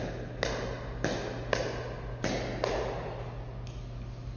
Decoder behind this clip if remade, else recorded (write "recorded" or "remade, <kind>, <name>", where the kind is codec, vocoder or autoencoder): recorded